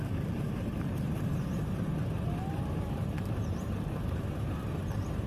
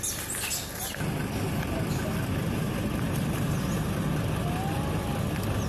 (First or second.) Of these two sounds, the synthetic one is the first